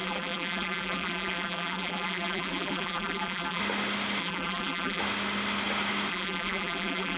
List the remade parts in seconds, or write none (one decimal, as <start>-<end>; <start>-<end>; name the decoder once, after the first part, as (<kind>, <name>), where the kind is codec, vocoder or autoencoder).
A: 0.0-3.6 (vocoder, BigVGAN v2); 4.2-5.0; 6.1-7.2